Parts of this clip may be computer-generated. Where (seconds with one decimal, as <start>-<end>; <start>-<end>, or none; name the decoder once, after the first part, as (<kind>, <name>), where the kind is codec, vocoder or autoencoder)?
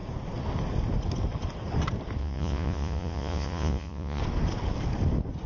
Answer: 2.2-4.2 (vocoder, Vocos)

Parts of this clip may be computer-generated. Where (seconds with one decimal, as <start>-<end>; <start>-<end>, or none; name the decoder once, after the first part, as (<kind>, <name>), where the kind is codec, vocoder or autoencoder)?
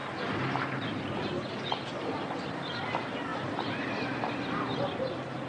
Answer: none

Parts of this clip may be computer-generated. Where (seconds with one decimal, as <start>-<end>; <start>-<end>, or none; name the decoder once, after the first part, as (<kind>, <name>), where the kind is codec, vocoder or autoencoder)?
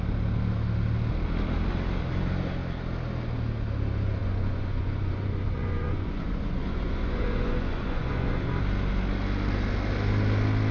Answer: 4.2-8.5 (vocoder, Vocos)